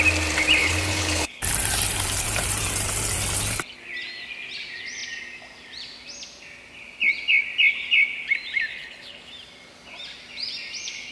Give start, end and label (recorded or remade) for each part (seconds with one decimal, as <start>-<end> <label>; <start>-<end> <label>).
0.0-0.6 recorded; 0.6-1.4 remade; 1.4-8.7 recorded; 8.7-9.3 remade; 9.3-11.1 recorded